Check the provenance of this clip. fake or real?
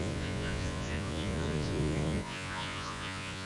fake